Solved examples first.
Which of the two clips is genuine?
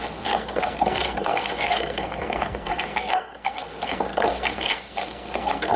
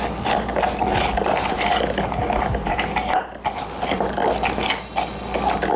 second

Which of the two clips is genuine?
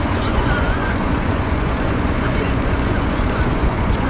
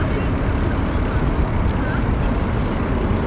second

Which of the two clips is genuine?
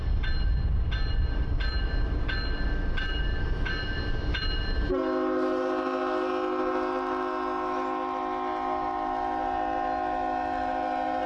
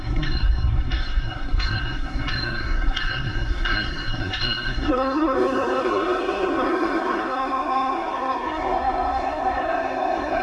first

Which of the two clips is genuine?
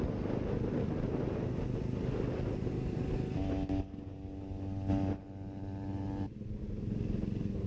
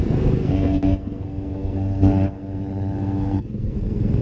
first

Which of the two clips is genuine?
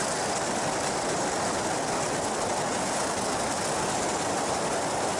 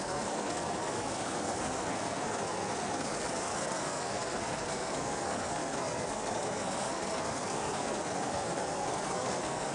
first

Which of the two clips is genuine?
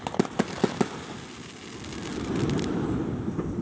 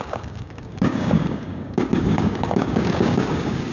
first